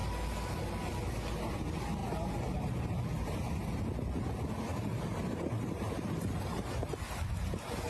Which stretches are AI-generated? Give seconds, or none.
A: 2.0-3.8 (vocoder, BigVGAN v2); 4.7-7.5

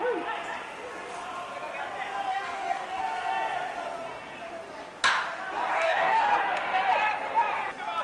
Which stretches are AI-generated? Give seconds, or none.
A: 2.3-3.0 (codec, DAC); 5.7-6.3

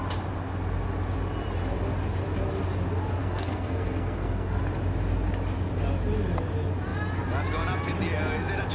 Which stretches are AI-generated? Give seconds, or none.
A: 3.2-4.6 (codec, SNAC)